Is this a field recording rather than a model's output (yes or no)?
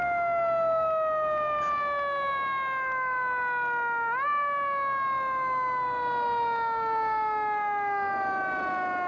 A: yes